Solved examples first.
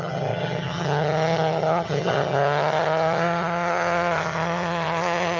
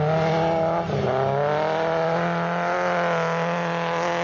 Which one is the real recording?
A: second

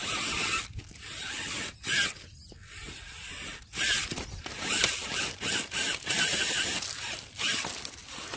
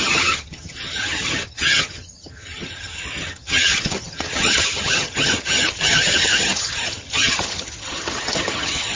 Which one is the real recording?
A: first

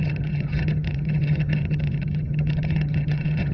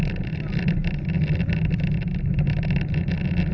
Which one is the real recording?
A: second